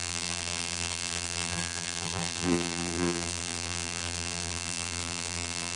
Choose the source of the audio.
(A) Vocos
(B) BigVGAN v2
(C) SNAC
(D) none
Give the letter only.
B